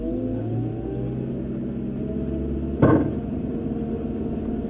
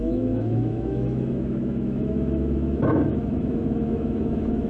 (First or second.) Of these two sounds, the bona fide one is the first